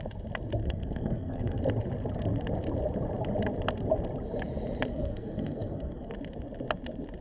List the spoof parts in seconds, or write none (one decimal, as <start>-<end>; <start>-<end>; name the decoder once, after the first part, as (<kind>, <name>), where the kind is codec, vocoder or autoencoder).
0.6-1.6 (codec, SNAC); 4.9-6.1